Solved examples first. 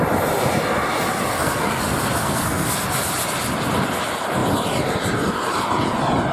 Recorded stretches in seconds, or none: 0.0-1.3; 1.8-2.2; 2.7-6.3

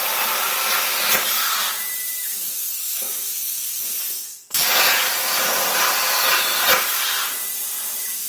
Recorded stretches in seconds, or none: 0.0-2.3; 4.8-8.3

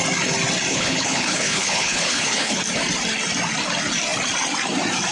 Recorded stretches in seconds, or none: 0.0-0.7; 2.6-5.1

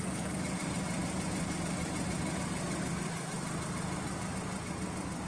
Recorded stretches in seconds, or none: 0.0-5.3